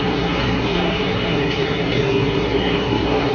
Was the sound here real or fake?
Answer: fake